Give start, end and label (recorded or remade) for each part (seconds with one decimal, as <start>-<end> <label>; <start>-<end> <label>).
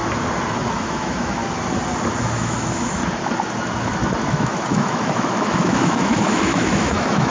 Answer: 0.0-0.7 recorded; 0.7-1.4 remade; 1.4-2.2 recorded; 2.2-3.0 remade; 3.0-4.3 recorded; 4.3-7.3 remade